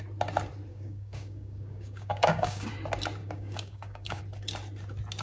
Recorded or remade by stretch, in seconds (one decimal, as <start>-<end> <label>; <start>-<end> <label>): 0.0-0.7 recorded; 0.7-2.7 remade; 2.7-3.2 recorded; 3.2-4.2 remade; 4.2-5.2 recorded